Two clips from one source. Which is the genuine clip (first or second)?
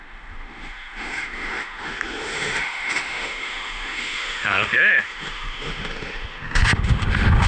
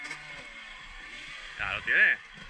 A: second